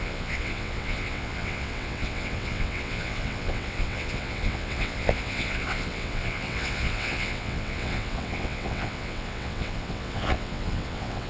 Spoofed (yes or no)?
yes